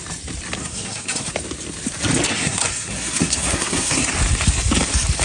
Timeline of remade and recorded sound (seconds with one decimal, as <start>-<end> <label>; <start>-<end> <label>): 0.0-0.6 recorded; 0.6-1.3 remade; 1.3-2.3 recorded; 2.3-4.1 remade; 4.1-5.2 recorded

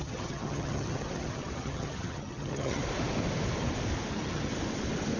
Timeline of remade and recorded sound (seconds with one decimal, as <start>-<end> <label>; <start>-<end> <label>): 0.0-2.8 remade; 2.8-4.1 recorded; 4.1-4.5 remade; 4.5-5.2 recorded